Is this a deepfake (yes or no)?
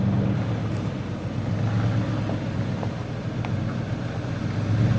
no